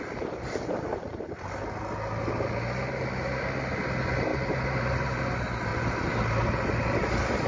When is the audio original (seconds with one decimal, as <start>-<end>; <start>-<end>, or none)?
0.0-4.3; 5.2-7.5